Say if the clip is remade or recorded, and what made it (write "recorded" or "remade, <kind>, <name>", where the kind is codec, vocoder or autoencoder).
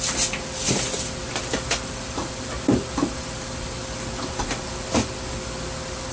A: remade, vocoder, BigVGAN v2